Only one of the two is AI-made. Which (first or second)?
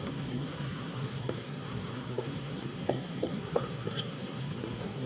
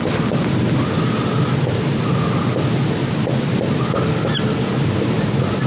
first